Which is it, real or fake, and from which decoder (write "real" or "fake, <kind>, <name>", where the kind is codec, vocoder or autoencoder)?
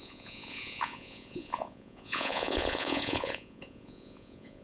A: fake, vocoder, Vocos